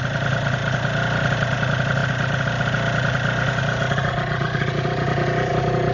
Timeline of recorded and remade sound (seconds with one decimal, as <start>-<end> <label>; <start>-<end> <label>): 0.0-5.9 recorded